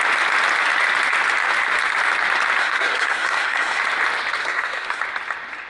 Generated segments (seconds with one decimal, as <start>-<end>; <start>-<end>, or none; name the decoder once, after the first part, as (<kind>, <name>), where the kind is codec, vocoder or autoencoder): 2.6-3.8 (codec, SNAC); 4.4-5.0